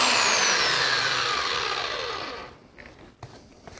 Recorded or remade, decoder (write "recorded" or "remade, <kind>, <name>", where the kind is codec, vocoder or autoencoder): recorded